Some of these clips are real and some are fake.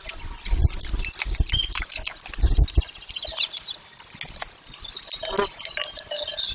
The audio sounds real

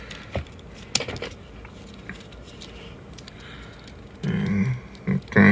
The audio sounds real